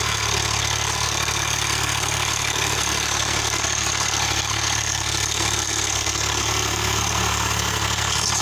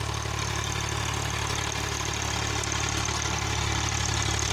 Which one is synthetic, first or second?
first